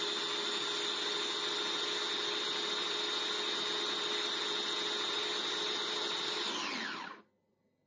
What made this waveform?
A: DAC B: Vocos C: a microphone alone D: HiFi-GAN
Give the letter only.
C